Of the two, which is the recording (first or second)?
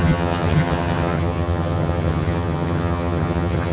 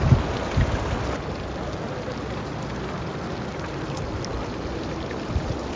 second